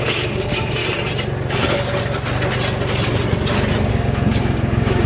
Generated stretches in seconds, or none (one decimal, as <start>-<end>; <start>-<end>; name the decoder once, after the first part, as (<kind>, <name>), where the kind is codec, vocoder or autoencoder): 0.0-0.8 (codec, DAC); 3.9-5.1